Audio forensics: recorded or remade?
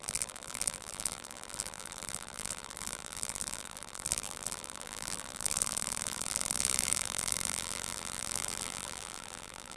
remade